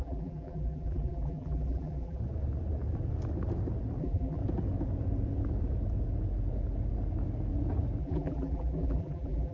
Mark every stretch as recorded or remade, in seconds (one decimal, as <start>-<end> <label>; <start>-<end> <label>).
0.0-2.2 remade; 2.2-4.0 recorded; 4.0-4.4 remade; 4.4-8.0 recorded; 8.0-9.5 remade